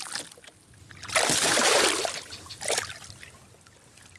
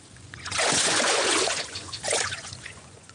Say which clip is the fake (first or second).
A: second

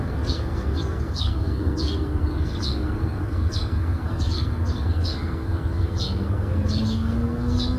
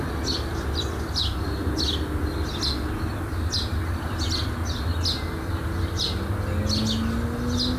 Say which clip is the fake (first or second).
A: first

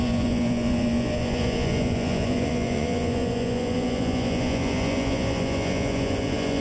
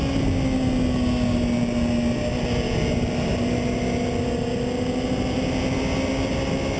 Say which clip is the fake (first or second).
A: first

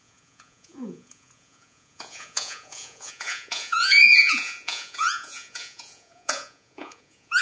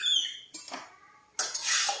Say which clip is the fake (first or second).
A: first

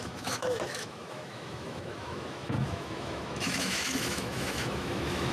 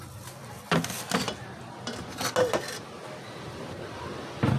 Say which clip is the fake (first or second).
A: first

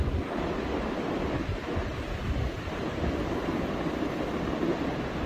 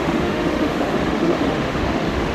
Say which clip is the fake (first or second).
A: second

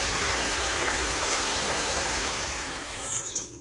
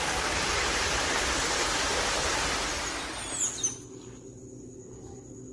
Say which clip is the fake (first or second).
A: first